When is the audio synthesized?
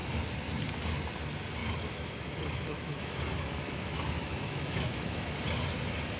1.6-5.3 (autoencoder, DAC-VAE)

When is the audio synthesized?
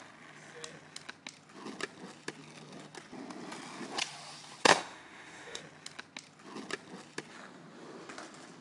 4.6-5.6 (autoencoder, DAC-VAE)